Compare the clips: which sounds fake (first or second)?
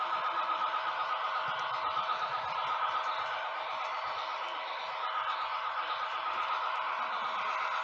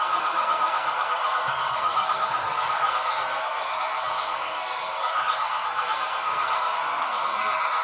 second